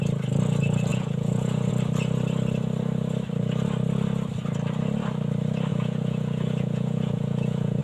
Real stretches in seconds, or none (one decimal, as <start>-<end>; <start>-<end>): 0.0-0.9; 1.7-5.7